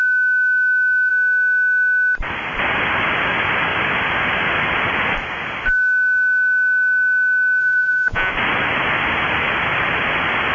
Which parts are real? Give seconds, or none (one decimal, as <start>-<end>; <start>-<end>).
0.0-7.6; 8.3-10.5